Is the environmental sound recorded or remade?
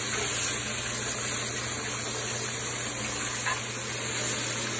recorded